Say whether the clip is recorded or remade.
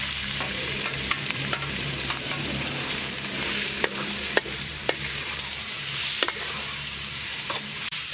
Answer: remade